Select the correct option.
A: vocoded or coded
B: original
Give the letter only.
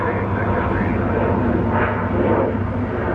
B